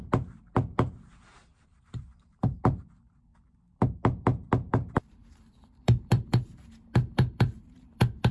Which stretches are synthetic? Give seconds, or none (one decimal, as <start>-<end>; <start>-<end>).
0.0-3.3; 4.7-8.3